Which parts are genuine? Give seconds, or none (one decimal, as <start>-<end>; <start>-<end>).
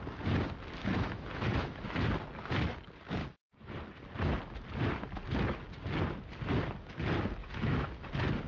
0.0-0.8; 1.8-3.2; 3.8-7.4; 8.1-8.5